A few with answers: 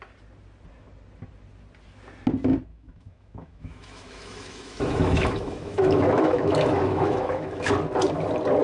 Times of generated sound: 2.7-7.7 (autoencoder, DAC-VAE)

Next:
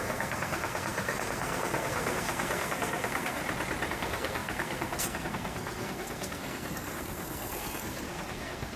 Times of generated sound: 0.0-3.4 (codec, SNAC); 3.9-8.8

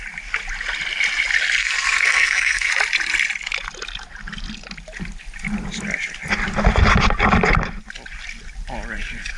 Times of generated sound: 1.6-2.7 (codec, SNAC)

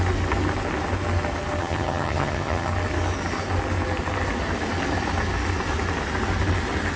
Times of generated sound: 1.6-2.7 (vocoder, HiFi-GAN)

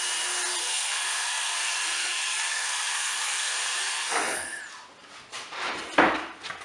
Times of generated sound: 0.6-4.6 (codec, SNAC)